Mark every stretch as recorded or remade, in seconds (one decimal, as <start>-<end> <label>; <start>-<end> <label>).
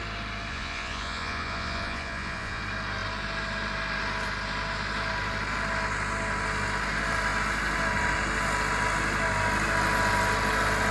0.0-0.5 recorded; 0.5-2.6 remade; 2.6-10.9 recorded